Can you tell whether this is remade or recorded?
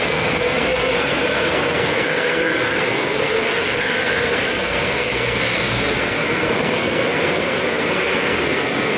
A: remade